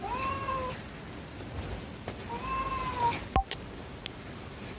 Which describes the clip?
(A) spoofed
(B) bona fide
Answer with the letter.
B